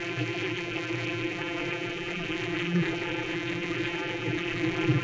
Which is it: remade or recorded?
remade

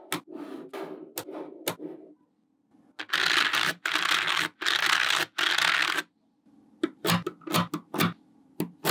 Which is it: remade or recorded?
recorded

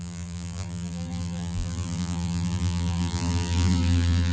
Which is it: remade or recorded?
remade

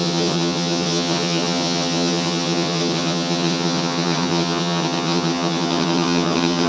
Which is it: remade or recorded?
remade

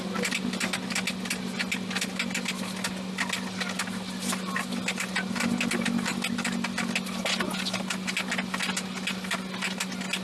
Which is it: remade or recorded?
recorded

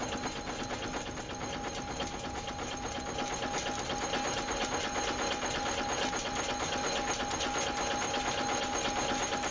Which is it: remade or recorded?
recorded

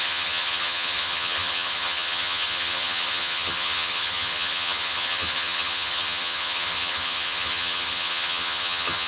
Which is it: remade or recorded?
remade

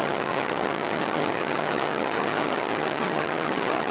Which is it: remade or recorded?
remade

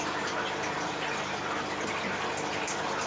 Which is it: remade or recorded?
recorded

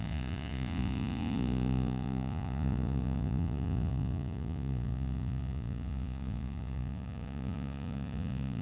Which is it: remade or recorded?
remade